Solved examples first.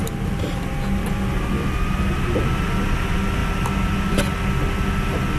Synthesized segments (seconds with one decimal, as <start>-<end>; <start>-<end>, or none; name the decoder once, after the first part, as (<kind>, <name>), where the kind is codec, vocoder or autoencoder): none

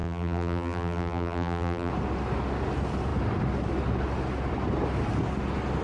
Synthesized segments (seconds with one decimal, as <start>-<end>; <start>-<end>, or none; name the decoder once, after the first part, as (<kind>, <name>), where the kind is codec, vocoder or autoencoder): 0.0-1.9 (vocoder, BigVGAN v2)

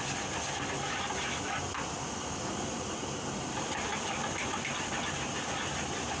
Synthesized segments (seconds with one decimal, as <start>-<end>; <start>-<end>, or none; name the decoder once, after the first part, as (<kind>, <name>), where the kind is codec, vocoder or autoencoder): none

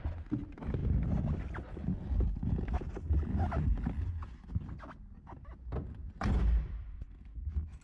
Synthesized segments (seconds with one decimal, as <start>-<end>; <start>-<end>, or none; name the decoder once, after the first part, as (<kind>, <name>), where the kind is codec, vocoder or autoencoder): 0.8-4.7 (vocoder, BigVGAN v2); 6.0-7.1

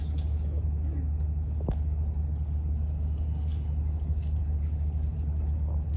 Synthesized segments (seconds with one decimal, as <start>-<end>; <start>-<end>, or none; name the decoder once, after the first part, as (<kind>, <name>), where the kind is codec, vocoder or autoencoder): none

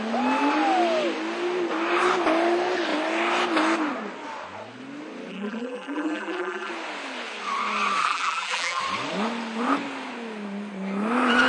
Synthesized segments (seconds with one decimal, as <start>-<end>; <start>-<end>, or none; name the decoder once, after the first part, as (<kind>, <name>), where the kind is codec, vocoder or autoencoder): 5.3-6.7 (vocoder, BigVGAN v2); 8.0-8.8